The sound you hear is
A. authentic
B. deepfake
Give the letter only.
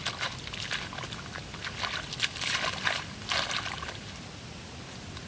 A